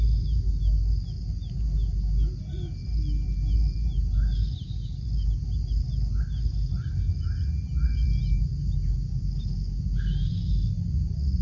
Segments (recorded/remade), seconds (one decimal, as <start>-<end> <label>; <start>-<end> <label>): 0.0-11.4 recorded